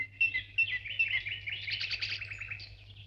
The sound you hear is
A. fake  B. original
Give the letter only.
B